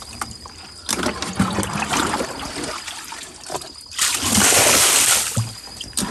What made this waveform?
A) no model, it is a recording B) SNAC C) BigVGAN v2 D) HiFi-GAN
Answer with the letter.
A